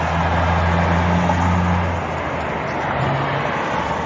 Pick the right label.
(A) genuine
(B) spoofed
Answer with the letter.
A